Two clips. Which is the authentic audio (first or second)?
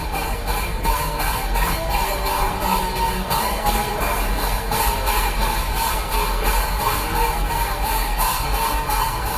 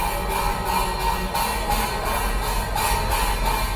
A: second